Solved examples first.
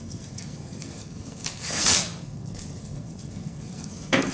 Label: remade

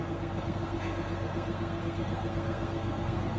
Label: remade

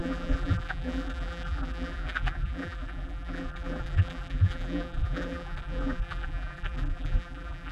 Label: remade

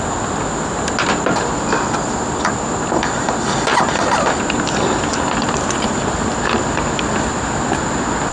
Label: recorded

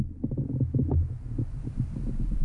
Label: recorded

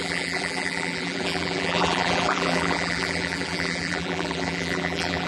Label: remade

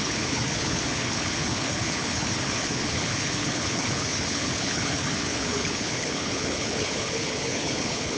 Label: remade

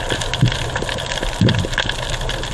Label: recorded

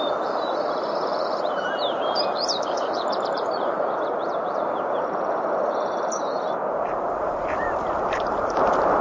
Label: remade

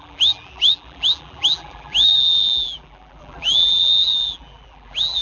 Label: remade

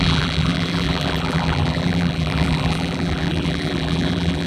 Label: remade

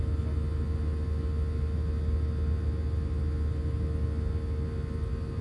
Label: recorded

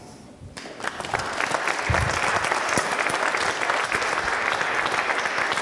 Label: recorded